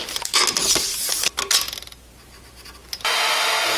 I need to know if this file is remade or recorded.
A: recorded